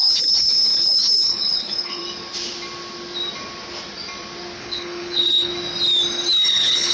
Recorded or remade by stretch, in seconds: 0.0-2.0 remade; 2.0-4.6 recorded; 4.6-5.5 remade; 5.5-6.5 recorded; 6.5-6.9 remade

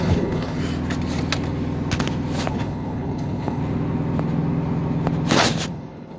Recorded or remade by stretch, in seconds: 0.0-0.6 remade; 0.6-2.5 recorded; 2.5-3.6 remade; 3.6-5.7 recorded; 5.7-6.2 remade

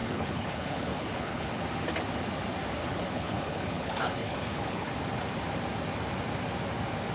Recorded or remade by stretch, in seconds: 0.0-1.5 remade; 1.5-2.8 recorded; 2.8-4.9 remade; 4.9-7.1 recorded

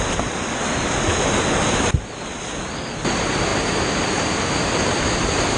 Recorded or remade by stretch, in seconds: 0.0-5.6 recorded